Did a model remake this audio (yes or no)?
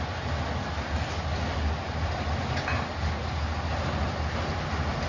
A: no